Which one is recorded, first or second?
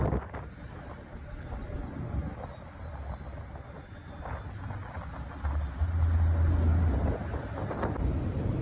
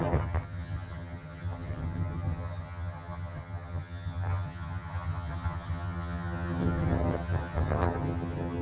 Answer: first